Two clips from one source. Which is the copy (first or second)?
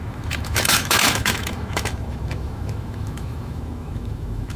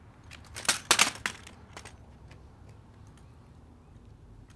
first